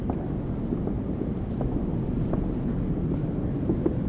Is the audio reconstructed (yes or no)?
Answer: no